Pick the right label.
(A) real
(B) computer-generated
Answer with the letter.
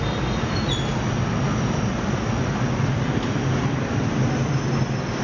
A